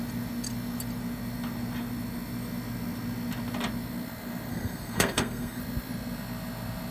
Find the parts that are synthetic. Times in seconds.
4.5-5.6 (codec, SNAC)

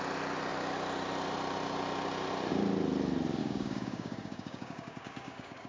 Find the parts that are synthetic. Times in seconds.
3.4-5.7 (codec, DAC)

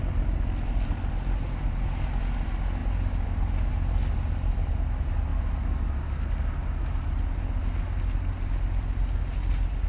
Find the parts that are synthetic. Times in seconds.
none